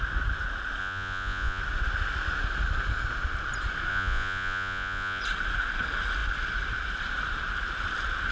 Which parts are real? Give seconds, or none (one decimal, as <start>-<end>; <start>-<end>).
0.0-0.8; 1.6-3.9; 5.2-8.3